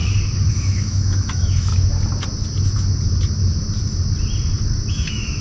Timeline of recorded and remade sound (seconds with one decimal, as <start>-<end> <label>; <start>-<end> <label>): 0.0-0.5 recorded; 0.5-1.7 remade; 1.7-4.9 recorded; 4.9-5.4 remade